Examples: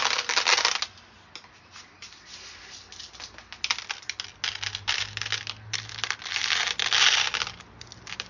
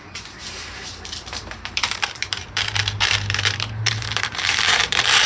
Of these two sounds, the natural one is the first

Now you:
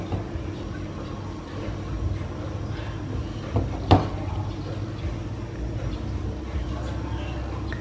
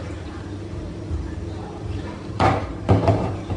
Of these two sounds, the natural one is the first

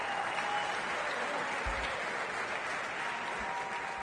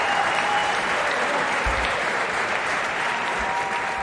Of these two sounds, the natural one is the first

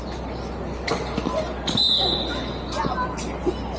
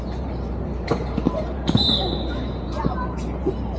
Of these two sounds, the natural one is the first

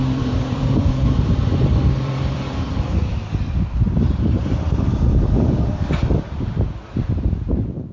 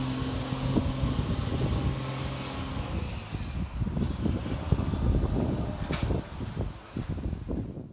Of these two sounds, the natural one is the second